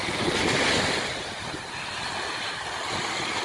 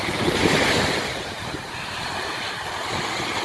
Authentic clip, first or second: first